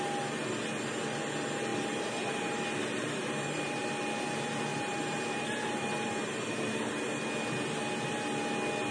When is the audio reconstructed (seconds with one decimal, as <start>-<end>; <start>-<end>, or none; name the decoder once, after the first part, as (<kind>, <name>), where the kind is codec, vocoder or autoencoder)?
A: 1.7-2.6 (vocoder, BigVGAN v2); 3.0-3.8; 4.7-6.9